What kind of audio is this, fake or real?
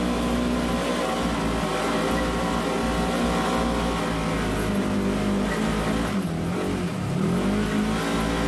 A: real